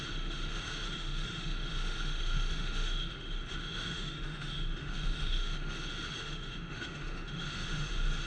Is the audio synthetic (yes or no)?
yes